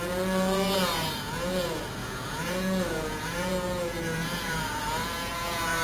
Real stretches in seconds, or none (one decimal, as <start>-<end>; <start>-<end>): none